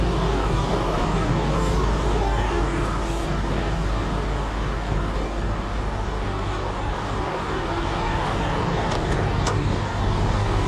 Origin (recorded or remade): remade